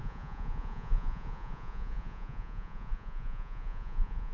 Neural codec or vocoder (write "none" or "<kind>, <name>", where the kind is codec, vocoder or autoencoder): vocoder, Vocos